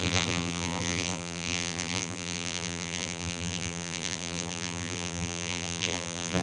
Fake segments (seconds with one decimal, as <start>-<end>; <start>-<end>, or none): 0.0-6.4